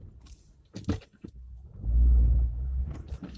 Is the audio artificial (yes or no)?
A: no